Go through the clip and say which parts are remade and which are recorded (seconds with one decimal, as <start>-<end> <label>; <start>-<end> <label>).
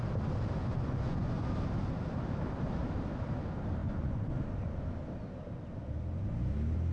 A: 0.0-0.6 recorded; 0.6-1.5 remade; 1.5-3.8 recorded; 3.8-4.3 remade; 4.3-6.9 recorded